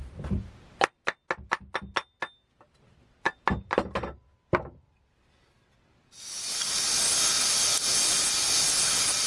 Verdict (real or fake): real